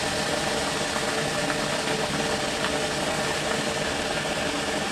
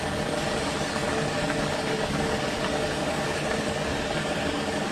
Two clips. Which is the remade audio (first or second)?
second